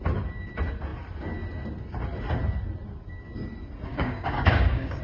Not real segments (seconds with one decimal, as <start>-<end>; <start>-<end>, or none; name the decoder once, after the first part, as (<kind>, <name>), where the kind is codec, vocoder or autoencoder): 3.9-5.0 (codec, DAC)